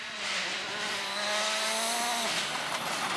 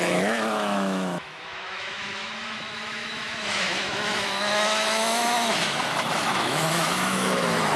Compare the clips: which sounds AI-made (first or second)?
second